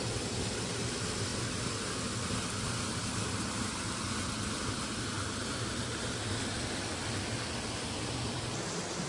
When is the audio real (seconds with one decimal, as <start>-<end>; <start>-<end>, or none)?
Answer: 0.0-9.1